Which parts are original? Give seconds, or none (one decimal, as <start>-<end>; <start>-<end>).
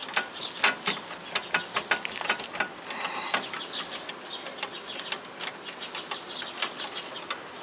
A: 0.0-7.6